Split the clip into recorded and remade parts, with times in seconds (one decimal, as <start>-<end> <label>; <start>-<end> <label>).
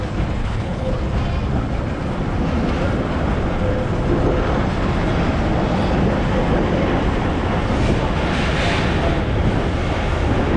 0.0-0.4 recorded; 0.4-0.9 remade; 0.9-10.6 recorded